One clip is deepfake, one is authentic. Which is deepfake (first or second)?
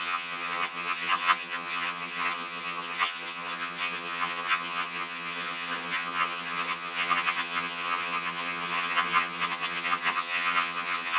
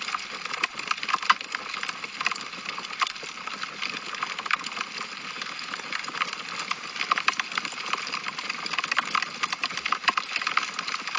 first